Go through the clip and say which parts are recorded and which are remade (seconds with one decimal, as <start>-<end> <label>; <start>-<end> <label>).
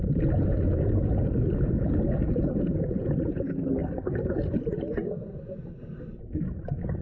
0.0-7.0 recorded